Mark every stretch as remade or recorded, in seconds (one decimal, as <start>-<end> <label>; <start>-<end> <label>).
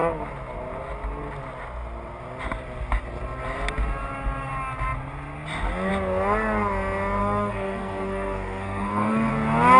0.0-7.2 recorded; 7.2-9.3 remade; 9.3-9.8 recorded